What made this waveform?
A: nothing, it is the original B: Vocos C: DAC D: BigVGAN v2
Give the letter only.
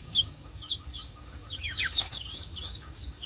C